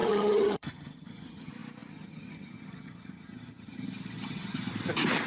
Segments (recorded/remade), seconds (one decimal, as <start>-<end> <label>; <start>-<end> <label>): 0.0-1.5 remade; 1.5-1.9 recorded; 1.9-4.7 remade; 4.7-5.3 recorded